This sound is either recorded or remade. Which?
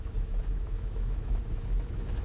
remade